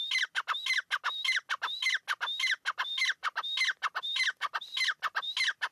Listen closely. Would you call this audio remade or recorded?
recorded